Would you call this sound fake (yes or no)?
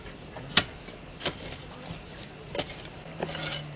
no